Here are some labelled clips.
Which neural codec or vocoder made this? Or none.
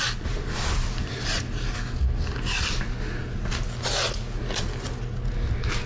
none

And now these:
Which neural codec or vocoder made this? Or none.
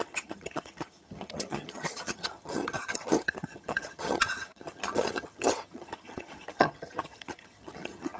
vocoder, HiFi-GAN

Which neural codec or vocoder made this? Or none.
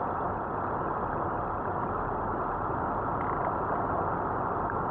none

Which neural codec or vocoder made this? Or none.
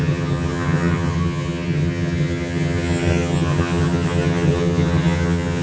vocoder, HiFi-GAN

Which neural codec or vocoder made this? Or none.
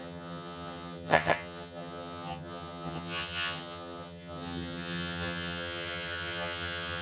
vocoder, HiFi-GAN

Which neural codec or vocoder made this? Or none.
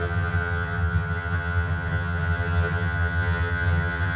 vocoder, HiFi-GAN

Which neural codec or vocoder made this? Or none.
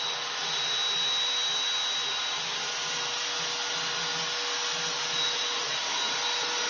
none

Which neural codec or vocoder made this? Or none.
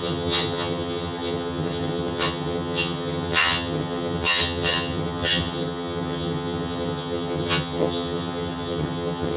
vocoder, HiFi-GAN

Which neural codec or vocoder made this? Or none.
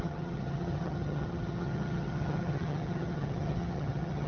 vocoder, HiFi-GAN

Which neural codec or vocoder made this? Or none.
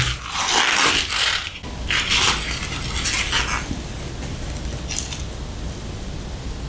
none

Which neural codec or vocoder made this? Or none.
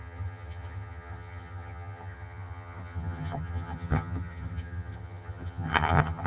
vocoder, HiFi-GAN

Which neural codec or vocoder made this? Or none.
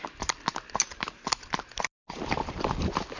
none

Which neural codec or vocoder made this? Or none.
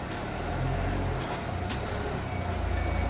none